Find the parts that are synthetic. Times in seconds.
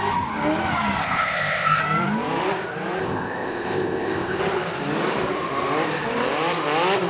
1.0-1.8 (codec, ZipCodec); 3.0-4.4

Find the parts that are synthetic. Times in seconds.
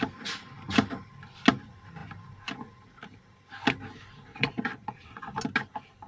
4.3-5.2 (vocoder, Vocos)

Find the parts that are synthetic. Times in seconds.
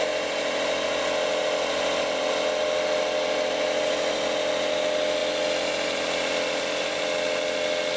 none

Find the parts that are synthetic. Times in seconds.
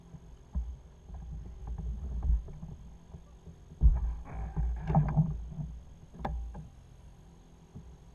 0.7-1.6 (vocoder, BigVGAN v2)